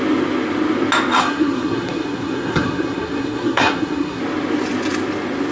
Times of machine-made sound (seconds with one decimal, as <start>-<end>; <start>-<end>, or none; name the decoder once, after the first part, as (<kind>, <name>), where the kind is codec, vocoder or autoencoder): 1.2-4.2 (codec, SNAC)